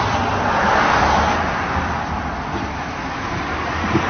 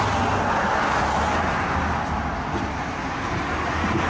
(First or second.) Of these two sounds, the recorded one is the second